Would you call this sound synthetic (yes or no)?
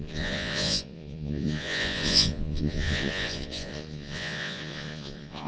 yes